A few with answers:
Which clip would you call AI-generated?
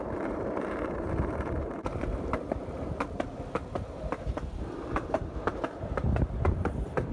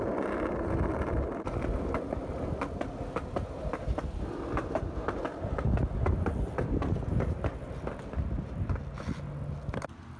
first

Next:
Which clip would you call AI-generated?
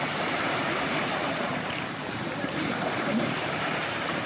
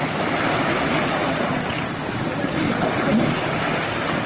first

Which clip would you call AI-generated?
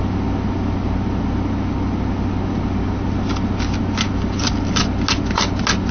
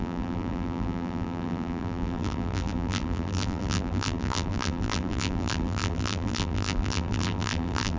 second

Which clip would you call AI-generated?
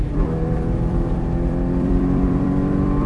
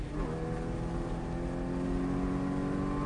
first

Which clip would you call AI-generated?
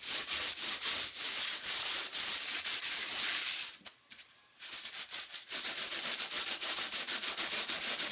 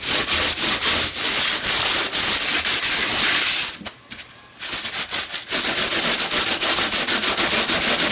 first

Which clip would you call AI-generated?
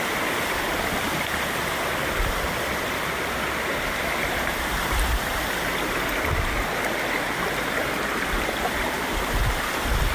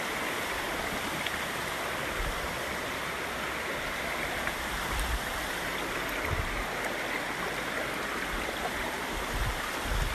first